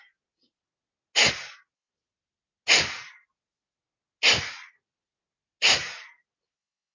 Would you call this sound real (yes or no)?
yes